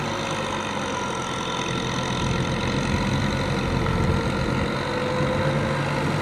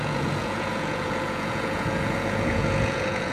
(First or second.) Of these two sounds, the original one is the first